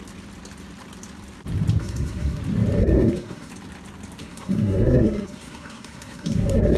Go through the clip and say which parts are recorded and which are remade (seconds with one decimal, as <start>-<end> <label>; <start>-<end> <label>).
0.0-1.8 recorded; 1.8-2.4 remade; 2.4-2.8 recorded; 2.8-3.5 remade; 3.5-4.2 recorded; 4.2-6.8 remade